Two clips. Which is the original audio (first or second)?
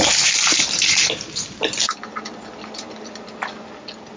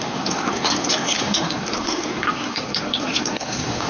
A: first